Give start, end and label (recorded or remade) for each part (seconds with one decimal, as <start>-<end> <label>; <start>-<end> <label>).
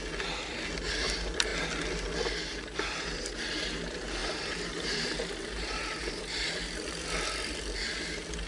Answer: 0.0-4.2 recorded; 4.2-6.2 remade; 6.2-8.5 recorded